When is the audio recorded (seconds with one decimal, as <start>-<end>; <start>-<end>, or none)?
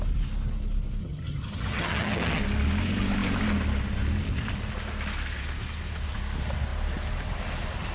0.0-1.0; 2.4-7.9